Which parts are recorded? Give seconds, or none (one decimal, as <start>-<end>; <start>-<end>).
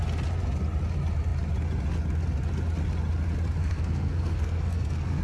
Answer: 0.0-3.6